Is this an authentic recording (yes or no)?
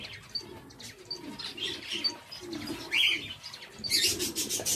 yes